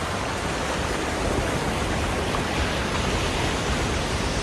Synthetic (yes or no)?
no